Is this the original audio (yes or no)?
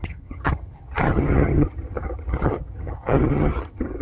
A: no